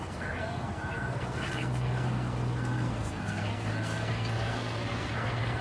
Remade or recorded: remade